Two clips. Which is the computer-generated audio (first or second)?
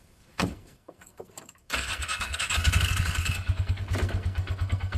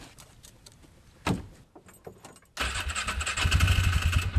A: first